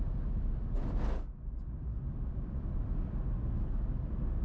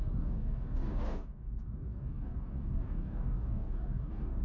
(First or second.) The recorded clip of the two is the first